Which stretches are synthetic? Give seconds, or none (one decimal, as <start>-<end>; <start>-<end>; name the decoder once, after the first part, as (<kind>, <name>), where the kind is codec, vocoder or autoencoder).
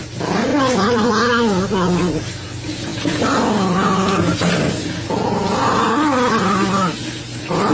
0.5-1.1 (vocoder, BigVGAN v2)